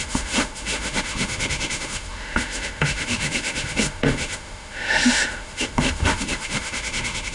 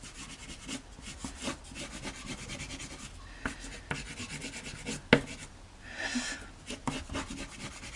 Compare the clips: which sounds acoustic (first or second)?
second